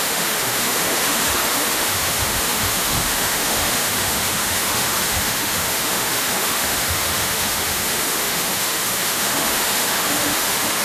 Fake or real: fake